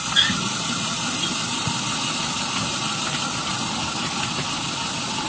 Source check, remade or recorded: recorded